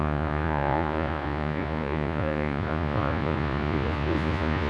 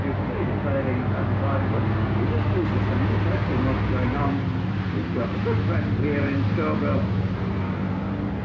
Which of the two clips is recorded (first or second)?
second